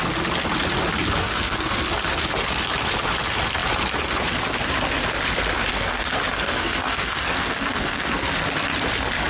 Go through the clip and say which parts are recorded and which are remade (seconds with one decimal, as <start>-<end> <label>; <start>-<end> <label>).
0.0-1.2 recorded; 1.2-1.9 remade; 1.9-5.7 recorded; 5.7-8.3 remade; 8.3-9.3 recorded